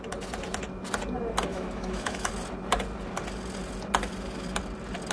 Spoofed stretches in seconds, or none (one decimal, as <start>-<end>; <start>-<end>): 1.5-2.3